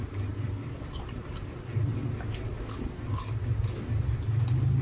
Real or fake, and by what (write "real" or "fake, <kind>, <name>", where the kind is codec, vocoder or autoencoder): real